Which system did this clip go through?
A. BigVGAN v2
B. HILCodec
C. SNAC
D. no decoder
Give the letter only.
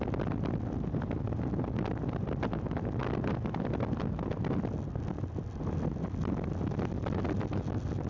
D